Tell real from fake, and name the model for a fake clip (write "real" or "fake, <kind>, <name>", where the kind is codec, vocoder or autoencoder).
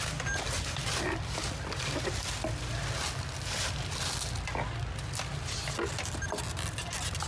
real